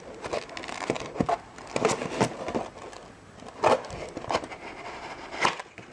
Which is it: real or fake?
real